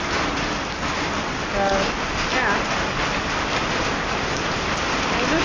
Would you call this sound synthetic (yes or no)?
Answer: no